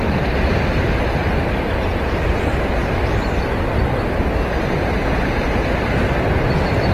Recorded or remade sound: recorded